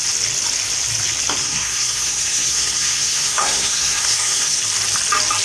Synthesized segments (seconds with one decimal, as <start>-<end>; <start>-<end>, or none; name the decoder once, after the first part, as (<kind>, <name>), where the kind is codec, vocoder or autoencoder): 1.4-4.6 (codec, SNAC)